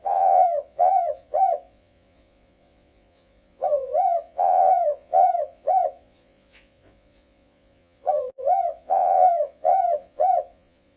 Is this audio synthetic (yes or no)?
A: yes